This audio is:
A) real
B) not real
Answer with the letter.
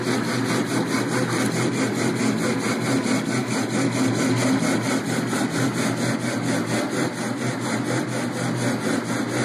A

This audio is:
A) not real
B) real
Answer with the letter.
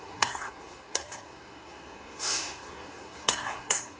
A